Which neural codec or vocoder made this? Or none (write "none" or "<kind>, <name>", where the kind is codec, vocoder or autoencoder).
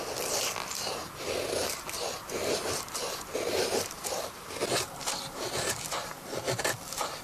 none